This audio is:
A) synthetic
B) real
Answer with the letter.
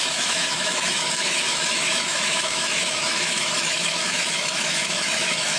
A